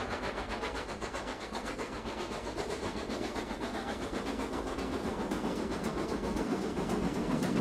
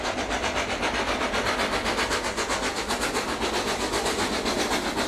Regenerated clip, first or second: first